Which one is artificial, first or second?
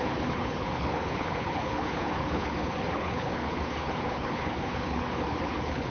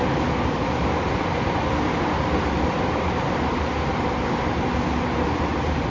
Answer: first